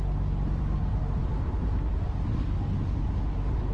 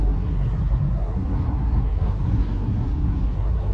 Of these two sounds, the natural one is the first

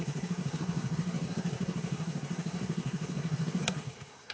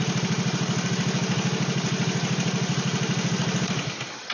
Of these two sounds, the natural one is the second